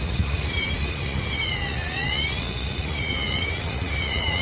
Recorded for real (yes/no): no